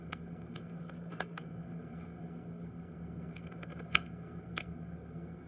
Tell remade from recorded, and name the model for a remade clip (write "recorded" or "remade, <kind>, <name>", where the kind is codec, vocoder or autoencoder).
remade, codec, SNAC